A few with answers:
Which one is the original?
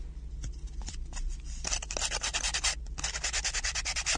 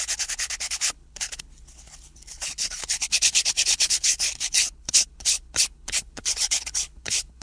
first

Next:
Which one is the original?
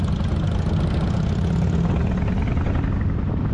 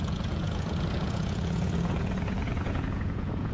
first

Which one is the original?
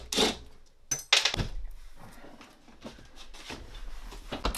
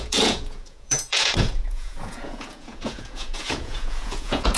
first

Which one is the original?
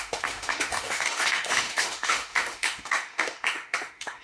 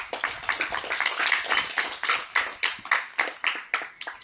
second